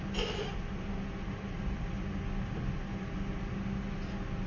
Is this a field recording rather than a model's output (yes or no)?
yes